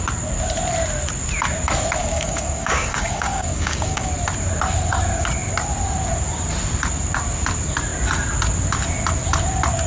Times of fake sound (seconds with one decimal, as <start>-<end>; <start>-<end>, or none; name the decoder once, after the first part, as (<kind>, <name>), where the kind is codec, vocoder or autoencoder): 2.0-4.1 (codec, DAC)